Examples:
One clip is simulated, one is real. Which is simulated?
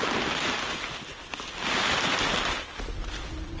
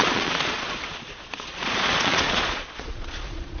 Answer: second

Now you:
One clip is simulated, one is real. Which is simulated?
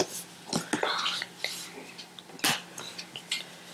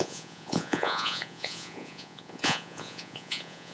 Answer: second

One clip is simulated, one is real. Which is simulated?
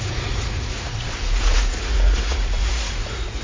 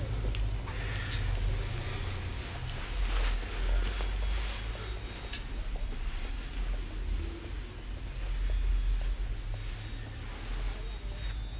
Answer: first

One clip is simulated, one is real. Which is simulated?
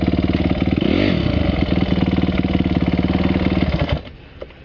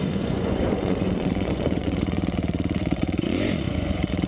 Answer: second